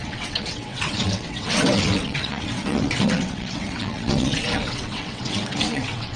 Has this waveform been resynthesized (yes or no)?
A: yes